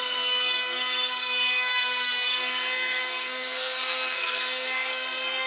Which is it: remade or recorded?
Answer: remade